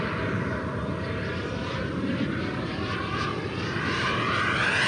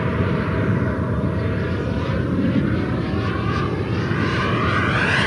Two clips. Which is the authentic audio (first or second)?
second